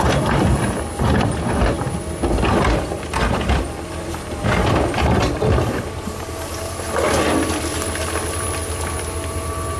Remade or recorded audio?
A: recorded